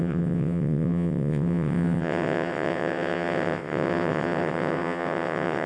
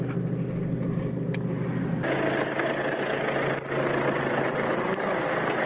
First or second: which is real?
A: second